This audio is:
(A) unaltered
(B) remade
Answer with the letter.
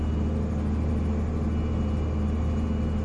A